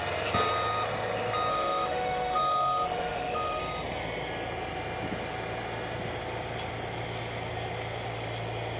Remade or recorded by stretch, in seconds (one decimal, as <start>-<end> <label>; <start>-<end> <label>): 0.0-1.5 recorded; 1.5-3.6 remade; 3.6-8.8 recorded